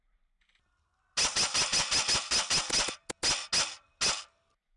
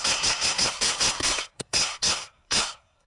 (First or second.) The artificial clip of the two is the second